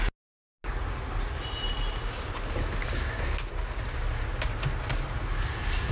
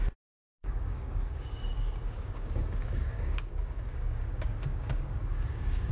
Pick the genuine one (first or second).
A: first